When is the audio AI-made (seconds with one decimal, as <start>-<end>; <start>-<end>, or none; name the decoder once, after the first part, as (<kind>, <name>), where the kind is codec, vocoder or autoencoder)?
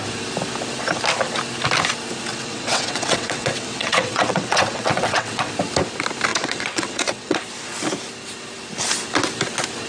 2.3-5.5 (vocoder, WaveNeXt); 6.3-7.4